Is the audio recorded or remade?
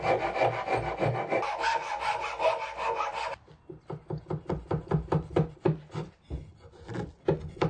recorded